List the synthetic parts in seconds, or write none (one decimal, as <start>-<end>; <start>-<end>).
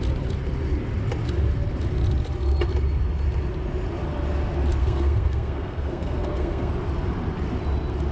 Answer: 4.8-6.7